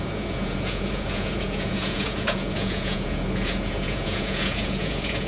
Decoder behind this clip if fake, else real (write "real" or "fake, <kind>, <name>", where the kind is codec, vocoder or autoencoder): fake, vocoder, Vocos